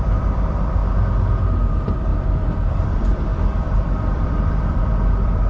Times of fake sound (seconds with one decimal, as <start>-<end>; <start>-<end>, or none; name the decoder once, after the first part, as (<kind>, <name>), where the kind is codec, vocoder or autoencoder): 0.0-0.8 (vocoder, BigVGAN v2); 1.7-2.1; 2.7-5.5